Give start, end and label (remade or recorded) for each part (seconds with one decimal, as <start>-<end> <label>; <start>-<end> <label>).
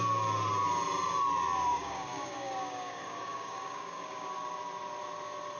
0.0-1.7 recorded; 1.7-4.3 remade; 4.3-5.6 recorded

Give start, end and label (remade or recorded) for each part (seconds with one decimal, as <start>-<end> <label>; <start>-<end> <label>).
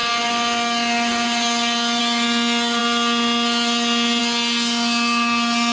0.0-5.7 recorded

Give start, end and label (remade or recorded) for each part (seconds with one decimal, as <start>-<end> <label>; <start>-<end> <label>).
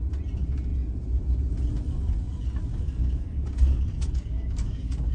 0.0-2.7 recorded; 2.7-5.1 remade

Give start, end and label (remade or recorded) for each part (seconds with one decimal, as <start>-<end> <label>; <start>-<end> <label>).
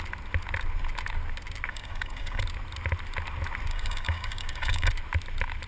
0.0-1.7 recorded; 1.7-2.4 remade; 2.4-3.7 recorded; 3.7-4.9 remade; 4.9-5.7 recorded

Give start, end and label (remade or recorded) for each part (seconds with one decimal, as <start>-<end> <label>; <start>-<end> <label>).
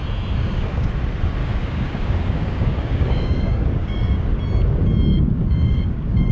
0.0-0.4 recorded; 0.4-0.9 remade; 0.9-1.4 recorded; 1.4-4.2 remade; 4.2-5.1 recorded; 5.1-6.3 remade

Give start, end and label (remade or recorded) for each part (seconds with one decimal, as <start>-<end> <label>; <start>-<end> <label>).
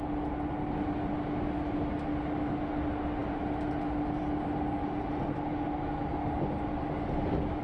0.0-7.6 recorded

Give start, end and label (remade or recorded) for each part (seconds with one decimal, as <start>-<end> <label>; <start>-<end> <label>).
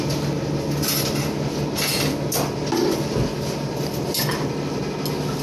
0.0-5.4 recorded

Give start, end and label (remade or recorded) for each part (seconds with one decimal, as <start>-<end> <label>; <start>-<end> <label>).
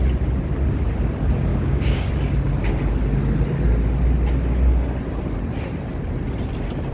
0.0-1.5 recorded; 1.5-2.1 remade; 2.1-6.9 recorded